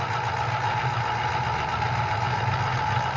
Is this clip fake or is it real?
real